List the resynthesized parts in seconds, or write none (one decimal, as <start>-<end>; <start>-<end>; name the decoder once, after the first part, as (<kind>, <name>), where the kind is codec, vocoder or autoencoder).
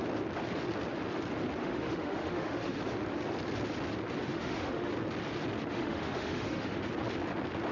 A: 1.6-2.8 (autoencoder, DAC-VAE); 4.3-4.9; 5.7-6.8